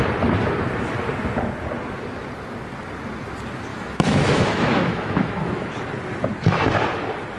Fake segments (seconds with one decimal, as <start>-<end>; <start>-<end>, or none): 3.7-5.7